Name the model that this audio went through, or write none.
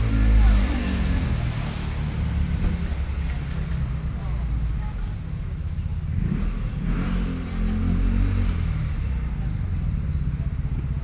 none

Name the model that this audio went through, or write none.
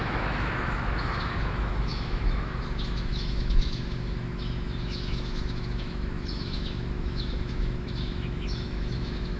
autoencoder, DAC-VAE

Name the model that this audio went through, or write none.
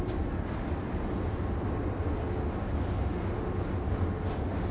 none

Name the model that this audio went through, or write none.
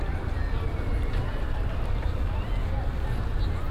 none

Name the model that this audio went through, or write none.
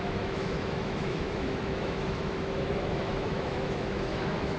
autoencoder, DAC-VAE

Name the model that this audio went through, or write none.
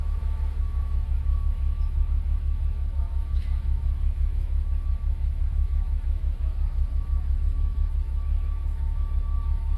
autoencoder, DAC-VAE